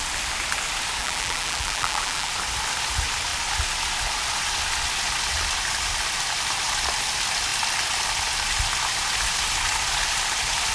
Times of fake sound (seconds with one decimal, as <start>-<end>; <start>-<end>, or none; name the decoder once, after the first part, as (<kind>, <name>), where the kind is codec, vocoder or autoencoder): 1.0-2.3 (vocoder, BigVGAN v2)